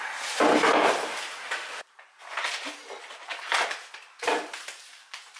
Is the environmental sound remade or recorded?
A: recorded